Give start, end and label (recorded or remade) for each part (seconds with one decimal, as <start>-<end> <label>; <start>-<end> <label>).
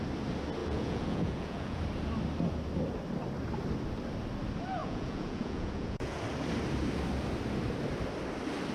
0.0-0.6 recorded; 0.6-1.8 remade; 1.8-4.8 recorded; 4.8-6.2 remade; 6.2-8.7 recorded